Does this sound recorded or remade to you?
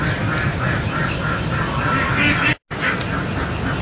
recorded